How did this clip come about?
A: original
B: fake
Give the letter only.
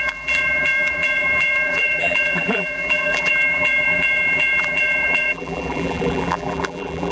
B